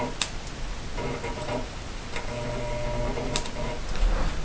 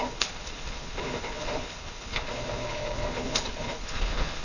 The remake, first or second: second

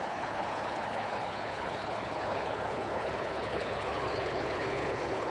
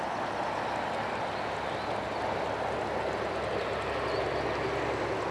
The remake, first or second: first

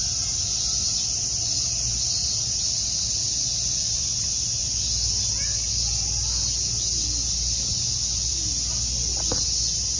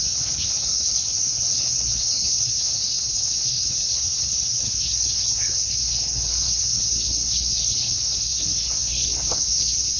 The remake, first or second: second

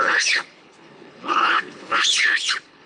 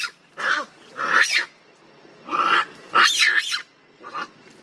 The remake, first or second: first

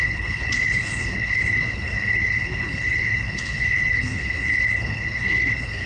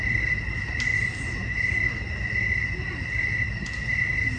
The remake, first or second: first